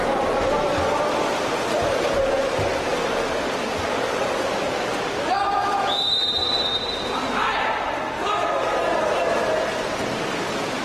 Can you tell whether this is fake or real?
fake